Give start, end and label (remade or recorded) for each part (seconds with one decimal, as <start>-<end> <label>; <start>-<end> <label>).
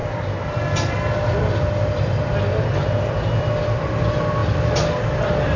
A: 0.0-5.6 recorded